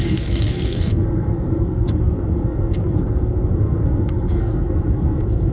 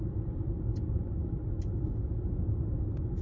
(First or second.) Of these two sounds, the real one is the second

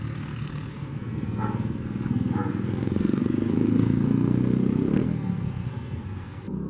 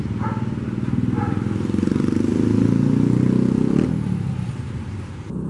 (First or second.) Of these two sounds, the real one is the second